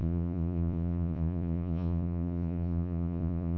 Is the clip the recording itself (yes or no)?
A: no